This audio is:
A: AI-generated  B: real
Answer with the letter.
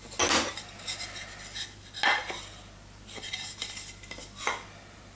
B